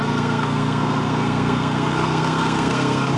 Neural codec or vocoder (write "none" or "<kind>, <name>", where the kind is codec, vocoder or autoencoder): codec, SNAC